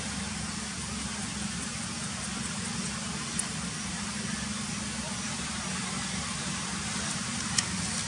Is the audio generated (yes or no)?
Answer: no